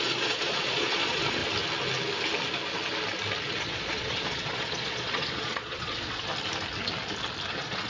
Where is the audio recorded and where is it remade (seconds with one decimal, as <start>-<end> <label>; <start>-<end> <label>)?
0.0-1.4 remade; 1.4-3.6 recorded; 3.6-6.3 remade; 6.3-7.5 recorded; 7.5-7.9 remade